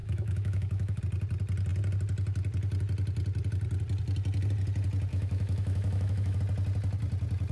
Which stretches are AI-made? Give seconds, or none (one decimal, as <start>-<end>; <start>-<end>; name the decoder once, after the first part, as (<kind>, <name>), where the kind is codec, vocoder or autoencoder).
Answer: 0.0-1.0 (autoencoder, DAC-VAE); 5.1-6.4